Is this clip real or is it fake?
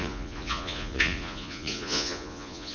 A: fake